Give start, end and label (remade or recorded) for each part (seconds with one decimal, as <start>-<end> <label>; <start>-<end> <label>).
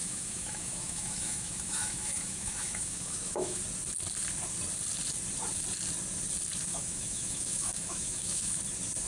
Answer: 0.0-3.6 remade; 3.6-6.7 recorded; 6.7-8.6 remade; 8.6-9.1 recorded